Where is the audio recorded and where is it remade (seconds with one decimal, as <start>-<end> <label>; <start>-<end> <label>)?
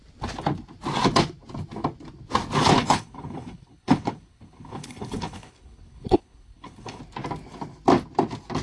0.0-2.8 recorded; 2.8-7.0 remade; 7.0-8.6 recorded